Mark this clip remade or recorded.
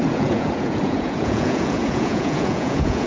remade